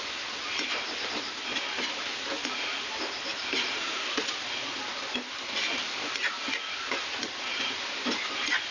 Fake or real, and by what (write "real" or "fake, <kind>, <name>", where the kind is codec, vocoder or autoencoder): real